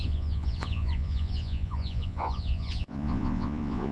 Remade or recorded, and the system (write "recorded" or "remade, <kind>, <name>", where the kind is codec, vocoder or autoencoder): remade, vocoder, Vocos